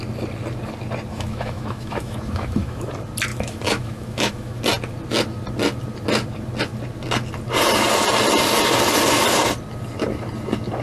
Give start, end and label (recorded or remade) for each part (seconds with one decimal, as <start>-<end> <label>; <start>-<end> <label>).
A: 0.0-1.1 recorded; 1.1-2.9 remade; 2.9-3.3 recorded; 3.3-4.6 remade; 4.6-10.8 recorded